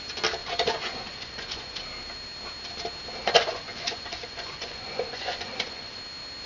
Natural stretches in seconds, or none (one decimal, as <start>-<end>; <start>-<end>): 0.0-0.4; 1.8-3.2; 6.0-6.5